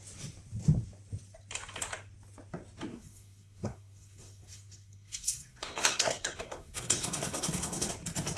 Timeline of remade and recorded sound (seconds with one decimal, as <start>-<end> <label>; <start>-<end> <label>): 0.0-2.9 recorded; 2.9-7.9 remade; 7.9-8.4 recorded